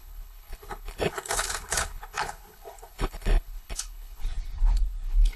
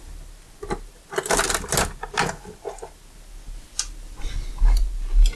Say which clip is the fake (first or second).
first